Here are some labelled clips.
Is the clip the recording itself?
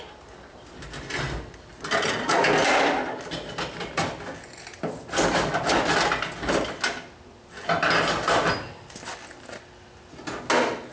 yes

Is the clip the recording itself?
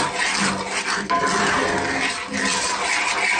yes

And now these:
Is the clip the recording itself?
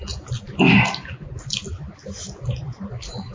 yes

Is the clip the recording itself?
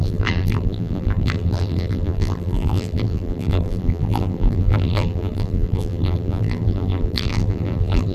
no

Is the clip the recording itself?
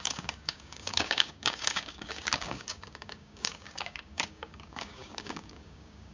no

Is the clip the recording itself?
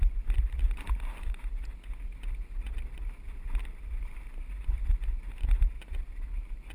yes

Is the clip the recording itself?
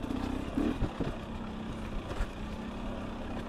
yes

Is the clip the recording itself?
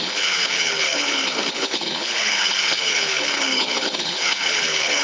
no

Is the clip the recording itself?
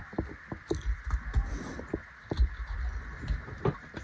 yes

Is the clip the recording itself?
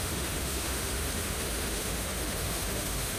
no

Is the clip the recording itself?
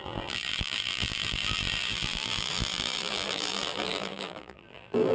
no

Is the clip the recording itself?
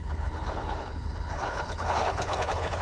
no